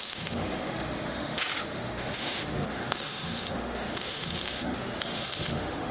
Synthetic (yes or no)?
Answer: yes